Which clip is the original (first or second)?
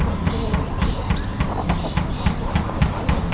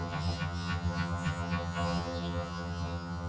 first